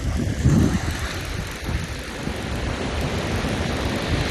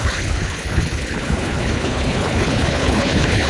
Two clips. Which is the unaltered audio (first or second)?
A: first